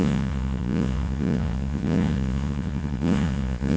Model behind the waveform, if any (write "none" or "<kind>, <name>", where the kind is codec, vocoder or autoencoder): vocoder, Vocos